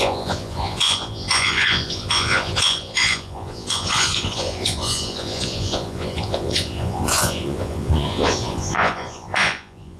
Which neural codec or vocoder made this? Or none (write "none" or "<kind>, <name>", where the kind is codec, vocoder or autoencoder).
vocoder, Vocos